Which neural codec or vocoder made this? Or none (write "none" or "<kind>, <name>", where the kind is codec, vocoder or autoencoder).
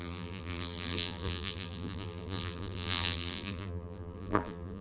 vocoder, BigVGAN v2